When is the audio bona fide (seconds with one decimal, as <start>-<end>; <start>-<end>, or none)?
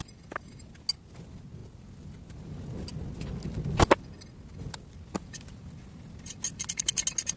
0.0-1.6; 2.3-7.4